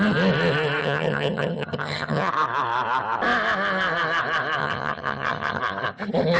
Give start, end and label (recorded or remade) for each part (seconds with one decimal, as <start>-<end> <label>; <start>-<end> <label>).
0.0-0.8 recorded; 0.8-2.3 remade; 2.3-4.6 recorded; 4.6-5.6 remade; 5.6-6.4 recorded